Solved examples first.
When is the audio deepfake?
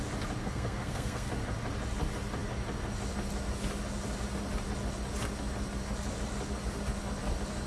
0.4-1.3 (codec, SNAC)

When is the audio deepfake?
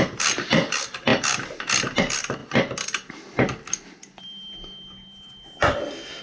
none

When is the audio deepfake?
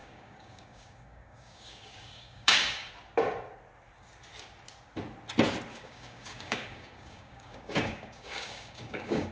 0.0-2.9 (codec, DAC); 5.7-9.3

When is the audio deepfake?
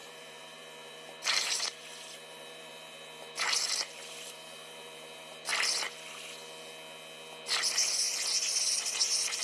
0.0-5.5 (vocoder, BigVGAN v2)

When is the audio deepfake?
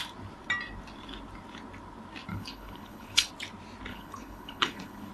2.3-3.3 (codec, HILCodec); 3.9-5.1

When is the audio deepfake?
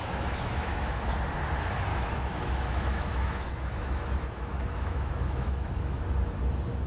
0.0-1.1 (autoencoder, DAC-VAE); 1.9-6.0